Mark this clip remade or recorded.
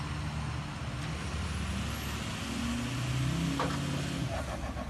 recorded